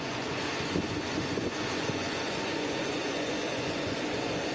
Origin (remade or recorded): remade